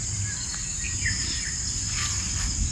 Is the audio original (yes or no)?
yes